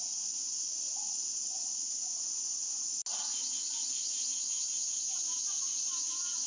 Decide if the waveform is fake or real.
real